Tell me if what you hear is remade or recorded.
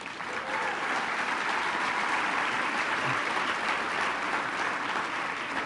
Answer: remade